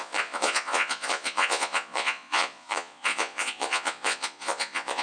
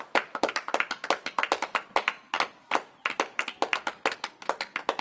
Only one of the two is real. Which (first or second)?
second